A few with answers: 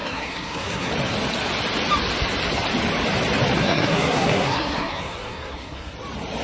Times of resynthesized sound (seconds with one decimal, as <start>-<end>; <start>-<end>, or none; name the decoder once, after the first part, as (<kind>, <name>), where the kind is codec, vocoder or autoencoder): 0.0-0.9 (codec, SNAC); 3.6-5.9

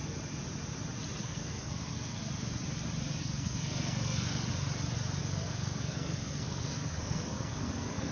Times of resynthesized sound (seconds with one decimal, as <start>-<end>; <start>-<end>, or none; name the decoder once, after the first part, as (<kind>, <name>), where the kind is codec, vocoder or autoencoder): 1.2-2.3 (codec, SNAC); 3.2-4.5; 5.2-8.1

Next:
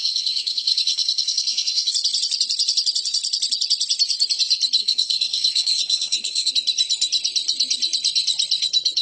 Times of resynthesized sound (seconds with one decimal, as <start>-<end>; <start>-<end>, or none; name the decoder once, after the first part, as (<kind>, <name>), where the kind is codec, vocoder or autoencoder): 0.0-1.9 (codec, SNAC); 4.8-6.5

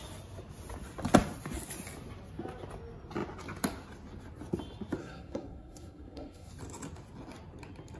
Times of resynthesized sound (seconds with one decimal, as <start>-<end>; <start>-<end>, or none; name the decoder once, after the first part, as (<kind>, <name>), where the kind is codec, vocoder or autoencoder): 5.0-6.5 (codec, SNAC)

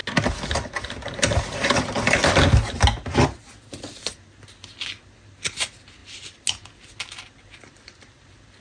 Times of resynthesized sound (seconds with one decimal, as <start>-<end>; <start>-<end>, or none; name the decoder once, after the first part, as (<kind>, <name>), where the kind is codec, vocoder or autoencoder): none

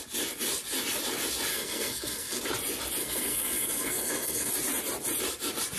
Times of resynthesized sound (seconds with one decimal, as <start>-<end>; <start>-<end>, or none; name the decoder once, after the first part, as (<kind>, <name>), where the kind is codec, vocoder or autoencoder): 1.5-2.4 (codec, SNAC); 3.0-4.5